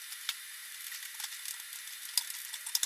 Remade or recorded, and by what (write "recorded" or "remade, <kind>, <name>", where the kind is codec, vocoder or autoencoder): recorded